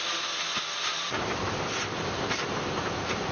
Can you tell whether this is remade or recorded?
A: recorded